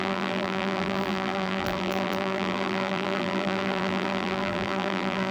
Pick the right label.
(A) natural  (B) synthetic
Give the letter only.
B